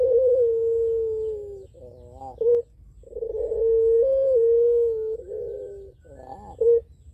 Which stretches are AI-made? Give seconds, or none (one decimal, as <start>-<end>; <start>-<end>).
none